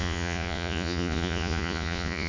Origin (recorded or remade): remade